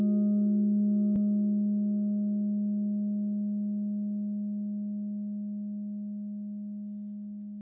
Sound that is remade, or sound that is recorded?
recorded